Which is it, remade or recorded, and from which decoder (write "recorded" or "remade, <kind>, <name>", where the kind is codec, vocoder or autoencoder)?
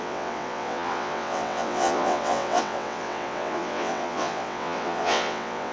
remade, vocoder, WaveNeXt